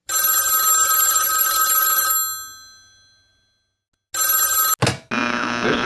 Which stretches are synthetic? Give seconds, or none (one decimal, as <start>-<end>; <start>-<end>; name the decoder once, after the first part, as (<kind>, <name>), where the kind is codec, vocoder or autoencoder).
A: 0.8-2.1 (vocoder, BigVGAN v2)